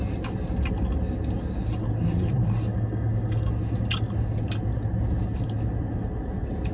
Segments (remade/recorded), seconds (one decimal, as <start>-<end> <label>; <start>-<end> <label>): 0.0-2.7 recorded; 2.7-3.5 remade; 3.5-6.7 recorded